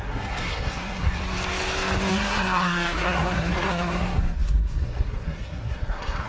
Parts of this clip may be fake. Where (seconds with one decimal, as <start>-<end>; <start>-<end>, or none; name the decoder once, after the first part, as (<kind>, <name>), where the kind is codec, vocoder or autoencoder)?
0.0-1.2 (codec, SNAC); 2.1-6.3